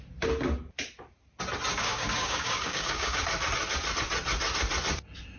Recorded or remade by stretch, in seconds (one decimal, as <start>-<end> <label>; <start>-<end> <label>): 0.0-1.7 recorded; 1.7-3.2 remade; 3.2-5.4 recorded